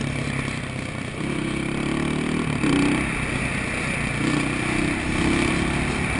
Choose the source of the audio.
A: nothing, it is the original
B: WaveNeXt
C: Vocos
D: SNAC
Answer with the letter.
A